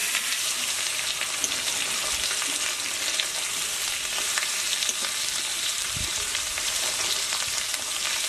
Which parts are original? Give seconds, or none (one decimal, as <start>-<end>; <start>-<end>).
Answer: 1.0-5.5; 7.0-8.3